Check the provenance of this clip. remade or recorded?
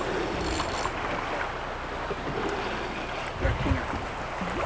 recorded